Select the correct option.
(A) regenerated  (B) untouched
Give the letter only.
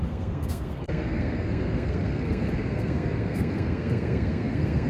A